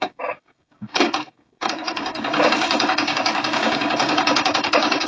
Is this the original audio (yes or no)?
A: no